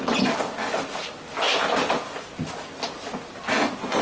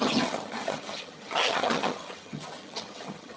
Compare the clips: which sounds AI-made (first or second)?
second